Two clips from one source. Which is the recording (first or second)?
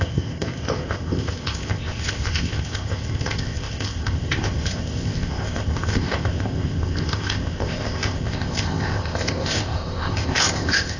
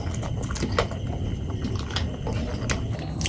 second